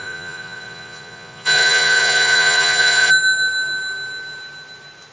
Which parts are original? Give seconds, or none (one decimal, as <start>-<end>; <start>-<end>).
3.1-5.1